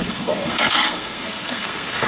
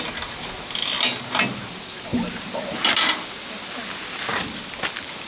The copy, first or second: first